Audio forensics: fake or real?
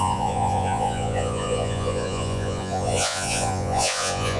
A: fake